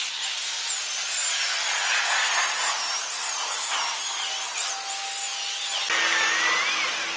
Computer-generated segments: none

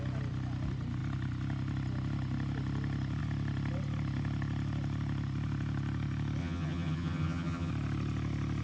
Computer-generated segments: 6.4-7.7 (vocoder, HiFi-GAN)

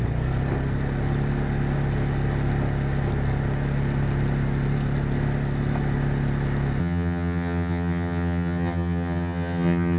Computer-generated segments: 6.8-10.0 (vocoder, HiFi-GAN)

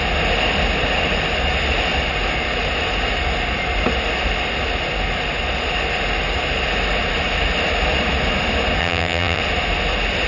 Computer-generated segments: 8.8-9.4 (vocoder, HiFi-GAN)

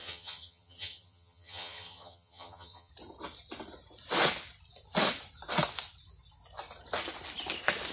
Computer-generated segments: 0.0-2.9 (vocoder, HiFi-GAN)

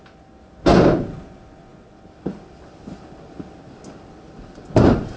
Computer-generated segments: none